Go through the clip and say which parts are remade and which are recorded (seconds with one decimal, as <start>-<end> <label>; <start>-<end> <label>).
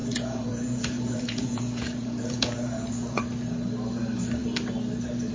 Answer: 0.0-3.2 remade; 3.2-5.3 recorded